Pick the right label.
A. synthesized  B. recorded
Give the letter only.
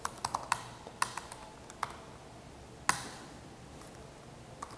B